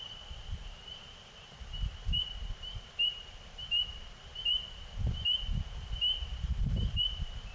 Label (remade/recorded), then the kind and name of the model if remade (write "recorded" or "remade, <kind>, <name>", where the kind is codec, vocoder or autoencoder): remade, vocoder, BigVGAN v2